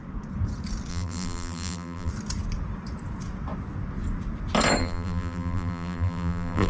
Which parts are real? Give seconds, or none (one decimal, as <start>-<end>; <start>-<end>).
0.0-0.9; 2.1-4.8

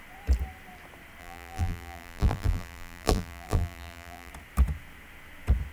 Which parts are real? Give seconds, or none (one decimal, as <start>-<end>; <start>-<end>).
0.0-1.2; 4.3-5.7

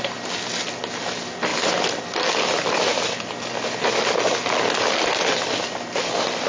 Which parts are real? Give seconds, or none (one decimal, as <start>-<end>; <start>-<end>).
0.0-6.5